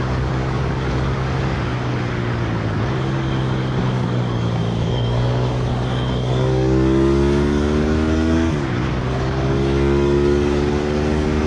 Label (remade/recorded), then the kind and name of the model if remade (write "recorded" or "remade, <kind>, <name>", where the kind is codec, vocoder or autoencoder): remade, codec, DAC